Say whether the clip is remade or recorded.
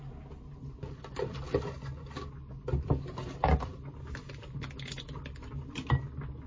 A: recorded